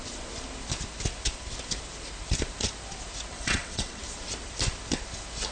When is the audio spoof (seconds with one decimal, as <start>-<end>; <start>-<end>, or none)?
3.3-4.0